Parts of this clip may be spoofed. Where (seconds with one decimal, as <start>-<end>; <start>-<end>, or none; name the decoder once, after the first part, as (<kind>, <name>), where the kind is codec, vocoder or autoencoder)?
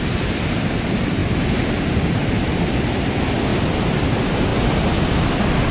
0.0-1.2 (vocoder, BigVGAN v2); 2.3-3.5; 4.1-4.5; 5.2-5.7